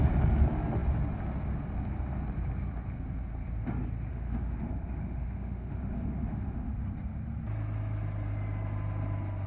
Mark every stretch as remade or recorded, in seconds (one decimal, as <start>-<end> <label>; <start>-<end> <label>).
0.0-4.1 recorded; 4.1-6.7 remade; 6.7-9.5 recorded